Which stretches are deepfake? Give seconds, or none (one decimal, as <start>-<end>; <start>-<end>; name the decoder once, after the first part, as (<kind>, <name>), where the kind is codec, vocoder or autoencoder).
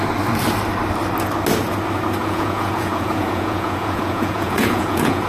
2.2-5.3 (vocoder, Vocos)